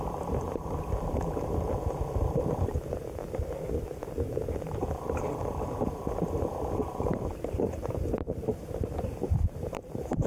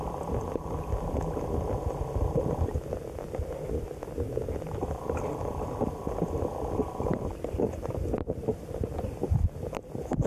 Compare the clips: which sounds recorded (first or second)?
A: second